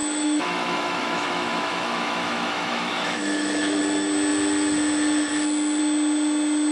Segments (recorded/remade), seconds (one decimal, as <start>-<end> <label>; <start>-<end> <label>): 0.0-3.8 remade; 3.8-6.7 recorded